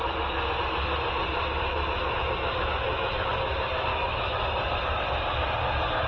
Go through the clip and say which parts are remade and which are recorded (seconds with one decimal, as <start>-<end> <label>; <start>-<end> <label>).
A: 0.0-1.7 recorded; 1.7-3.3 remade; 3.3-3.9 recorded; 3.9-4.4 remade; 4.4-6.1 recorded